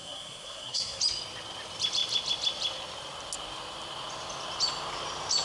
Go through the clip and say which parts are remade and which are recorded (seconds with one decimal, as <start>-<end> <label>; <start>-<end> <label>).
0.0-1.0 remade; 1.0-5.4 recorded